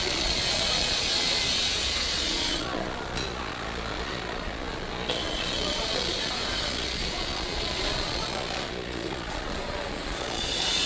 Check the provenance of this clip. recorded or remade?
remade